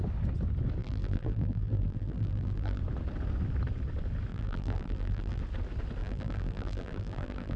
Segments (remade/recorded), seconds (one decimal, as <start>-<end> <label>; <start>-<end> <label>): 0.0-0.8 recorded; 0.8-2.8 remade; 2.8-4.3 recorded; 4.3-5.4 remade; 5.4-6.0 recorded; 6.0-7.6 remade